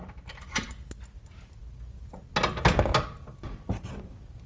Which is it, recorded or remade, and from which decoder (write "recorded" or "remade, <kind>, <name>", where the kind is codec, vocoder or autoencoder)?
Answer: recorded